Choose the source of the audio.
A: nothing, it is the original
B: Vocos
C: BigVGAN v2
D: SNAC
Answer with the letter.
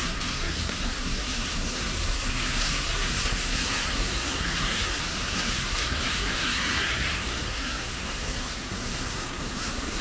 D